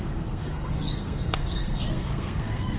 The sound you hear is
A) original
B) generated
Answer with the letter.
B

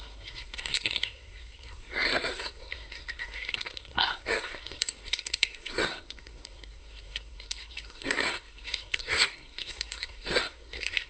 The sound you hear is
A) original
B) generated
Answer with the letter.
B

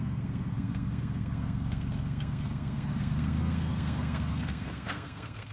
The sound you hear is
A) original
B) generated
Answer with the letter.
B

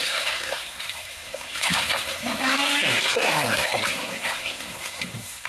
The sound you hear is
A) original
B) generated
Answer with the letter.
B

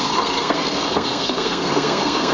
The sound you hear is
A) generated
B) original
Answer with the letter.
A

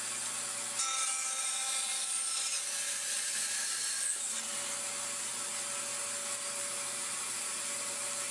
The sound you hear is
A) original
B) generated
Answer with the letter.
A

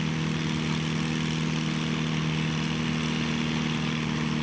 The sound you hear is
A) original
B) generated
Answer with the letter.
A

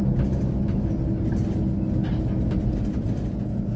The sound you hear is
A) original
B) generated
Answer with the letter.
A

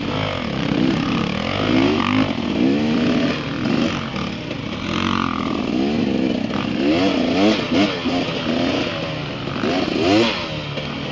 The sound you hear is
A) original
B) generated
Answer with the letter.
A